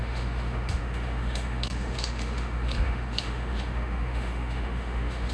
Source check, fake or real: fake